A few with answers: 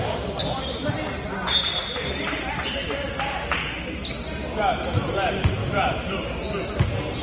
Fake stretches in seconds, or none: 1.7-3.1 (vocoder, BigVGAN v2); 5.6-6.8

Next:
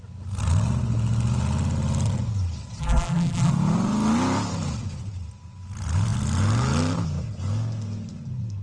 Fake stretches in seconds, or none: 2.8-3.5 (vocoder, BigVGAN v2)

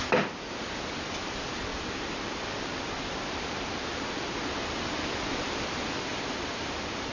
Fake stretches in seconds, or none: 1.7-2.4 (vocoder, BigVGAN v2); 6.1-7.1

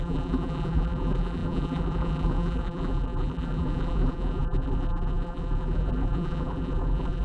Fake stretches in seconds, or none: 0.0-7.2 (vocoder, BigVGAN v2)

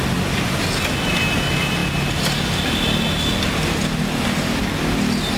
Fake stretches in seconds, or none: none

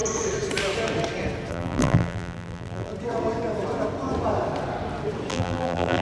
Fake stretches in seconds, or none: 1.5-2.9 (vocoder, BigVGAN v2); 5.3-6.0